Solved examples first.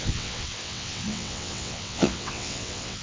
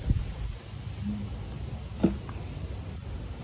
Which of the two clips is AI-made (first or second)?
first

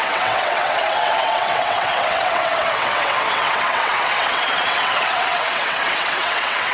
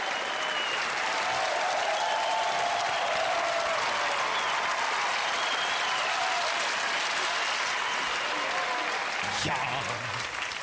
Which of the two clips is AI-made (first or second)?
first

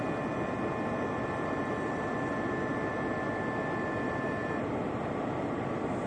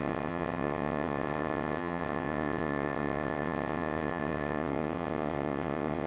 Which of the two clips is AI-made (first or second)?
second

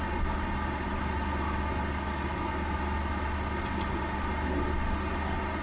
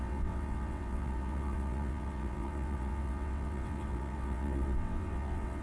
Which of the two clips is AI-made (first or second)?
second